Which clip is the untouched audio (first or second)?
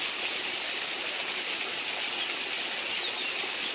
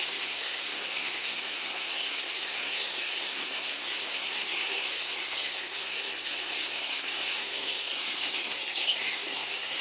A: first